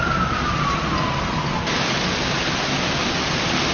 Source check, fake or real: real